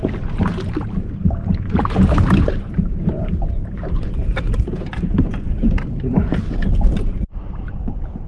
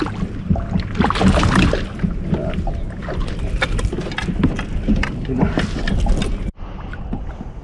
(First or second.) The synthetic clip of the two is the first